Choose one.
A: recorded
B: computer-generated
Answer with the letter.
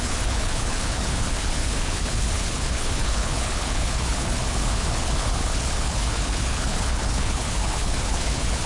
B